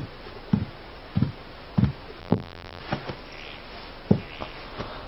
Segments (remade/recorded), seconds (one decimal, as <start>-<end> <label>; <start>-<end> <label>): 0.0-2.2 recorded; 2.2-2.8 remade; 2.8-5.1 recorded